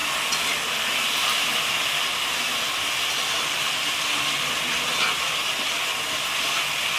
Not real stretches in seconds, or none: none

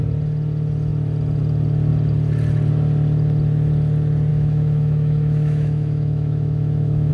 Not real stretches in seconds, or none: 4.3-7.1 (autoencoder, DAC-VAE)

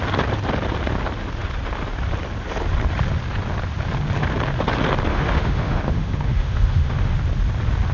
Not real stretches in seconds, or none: 5.1-7.1 (autoencoder, DAC-VAE)

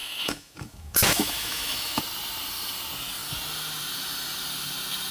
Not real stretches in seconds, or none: 0.0-2.0 (autoencoder, DAC-VAE)